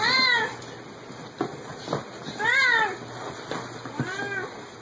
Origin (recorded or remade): recorded